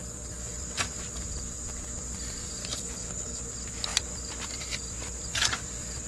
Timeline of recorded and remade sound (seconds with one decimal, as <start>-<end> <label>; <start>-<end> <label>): 0.0-2.6 recorded; 2.6-3.4 remade; 3.4-6.1 recorded